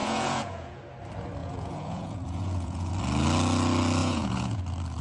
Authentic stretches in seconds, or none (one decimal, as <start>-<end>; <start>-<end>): 0.8-1.4; 2.9-4.0; 4.6-5.0